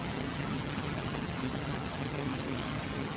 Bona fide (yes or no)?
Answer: no